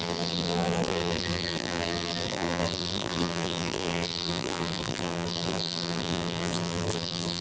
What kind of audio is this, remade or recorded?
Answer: remade